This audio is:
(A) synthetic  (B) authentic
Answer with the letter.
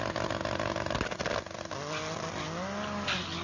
B